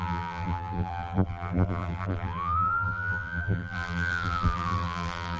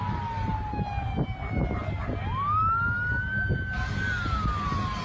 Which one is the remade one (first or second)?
first